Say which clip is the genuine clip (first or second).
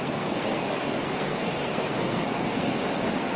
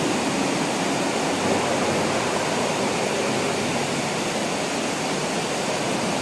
second